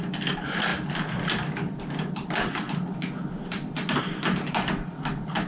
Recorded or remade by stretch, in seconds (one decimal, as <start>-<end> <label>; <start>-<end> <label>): 0.0-5.5 recorded